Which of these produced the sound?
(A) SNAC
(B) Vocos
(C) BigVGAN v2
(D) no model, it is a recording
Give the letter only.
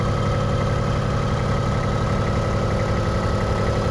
D